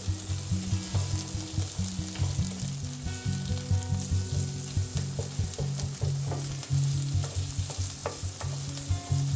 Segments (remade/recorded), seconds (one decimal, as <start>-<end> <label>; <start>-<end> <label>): 0.0-9.4 recorded